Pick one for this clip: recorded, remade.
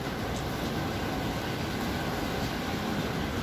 recorded